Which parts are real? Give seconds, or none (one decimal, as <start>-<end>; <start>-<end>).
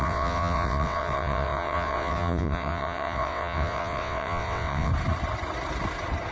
4.9-6.3